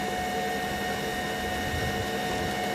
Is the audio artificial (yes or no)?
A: no